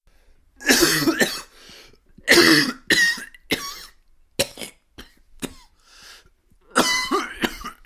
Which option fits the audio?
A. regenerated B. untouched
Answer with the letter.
B